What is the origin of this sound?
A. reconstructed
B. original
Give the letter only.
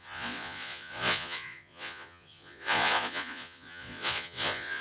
A